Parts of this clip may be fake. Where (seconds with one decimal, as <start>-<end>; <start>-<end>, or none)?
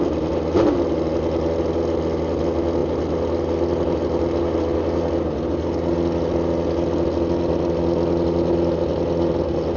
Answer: none